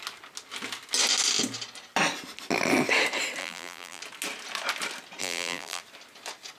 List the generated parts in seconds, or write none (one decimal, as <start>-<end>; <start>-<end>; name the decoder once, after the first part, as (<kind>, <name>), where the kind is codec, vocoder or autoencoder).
3.4-4.0 (vocoder, BigVGAN v2); 5.2-5.8